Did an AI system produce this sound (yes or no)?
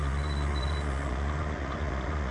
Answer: yes